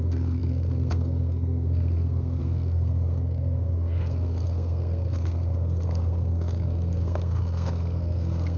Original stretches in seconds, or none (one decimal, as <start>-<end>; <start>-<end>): none